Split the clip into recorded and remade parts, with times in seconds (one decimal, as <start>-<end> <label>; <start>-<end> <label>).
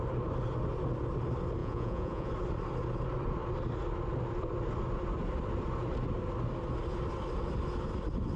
0.0-1.6 recorded; 1.6-2.3 remade; 2.3-8.4 recorded